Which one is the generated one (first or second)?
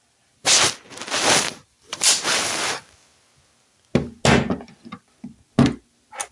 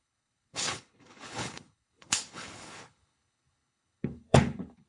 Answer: second